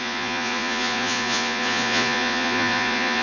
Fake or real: fake